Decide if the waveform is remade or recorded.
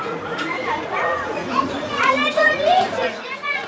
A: remade